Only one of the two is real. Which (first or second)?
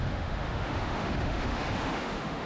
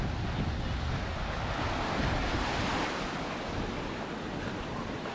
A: second